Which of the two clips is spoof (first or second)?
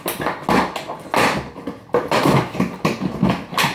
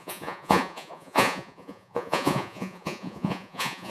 second